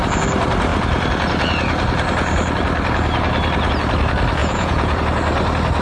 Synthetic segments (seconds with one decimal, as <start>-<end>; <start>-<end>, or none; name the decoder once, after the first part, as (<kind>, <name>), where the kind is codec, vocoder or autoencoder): 4.4-5.0 (vocoder, Vocos)